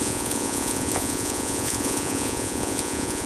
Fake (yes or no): yes